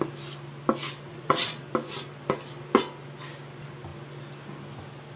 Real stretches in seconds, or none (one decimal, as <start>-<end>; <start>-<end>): 0.0-1.1; 1.6-5.2